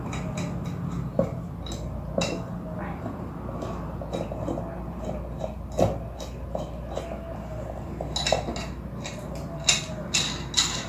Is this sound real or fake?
real